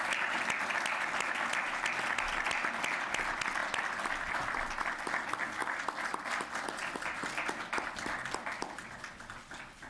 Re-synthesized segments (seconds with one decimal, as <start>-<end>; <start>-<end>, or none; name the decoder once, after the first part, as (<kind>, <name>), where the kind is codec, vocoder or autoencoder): none